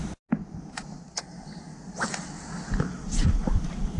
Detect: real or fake real